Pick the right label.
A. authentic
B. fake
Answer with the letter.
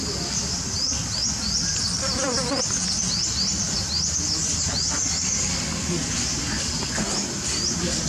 A